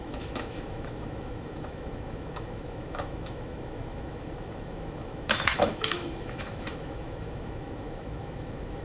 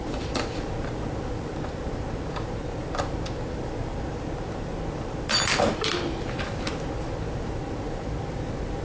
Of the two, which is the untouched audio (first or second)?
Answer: second